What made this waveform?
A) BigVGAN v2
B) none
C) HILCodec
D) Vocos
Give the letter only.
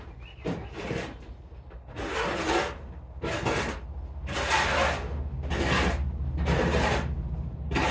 B